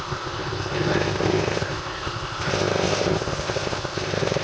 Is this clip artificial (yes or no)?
yes